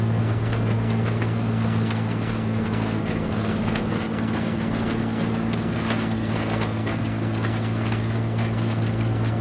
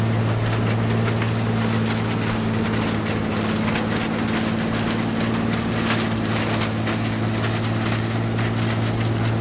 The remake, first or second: first